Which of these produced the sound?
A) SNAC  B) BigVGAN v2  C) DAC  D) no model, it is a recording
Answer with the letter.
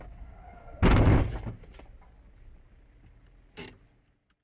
D